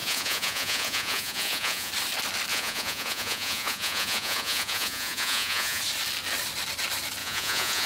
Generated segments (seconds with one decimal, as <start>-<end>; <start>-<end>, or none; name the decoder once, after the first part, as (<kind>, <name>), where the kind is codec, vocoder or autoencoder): 0.0-1.9 (vocoder, Vocos); 2.5-5.8; 7.2-7.9